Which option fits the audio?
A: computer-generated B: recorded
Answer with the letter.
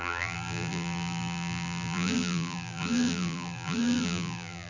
A